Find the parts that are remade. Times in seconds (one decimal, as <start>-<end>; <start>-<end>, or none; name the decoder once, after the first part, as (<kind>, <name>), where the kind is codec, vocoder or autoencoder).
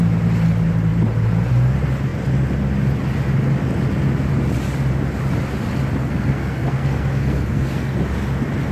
6.0-8.0 (codec, SNAC)